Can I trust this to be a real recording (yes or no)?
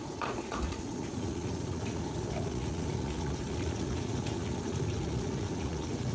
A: no